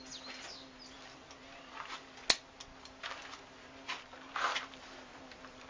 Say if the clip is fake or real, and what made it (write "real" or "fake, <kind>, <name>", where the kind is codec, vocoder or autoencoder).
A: real